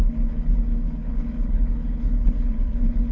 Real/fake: fake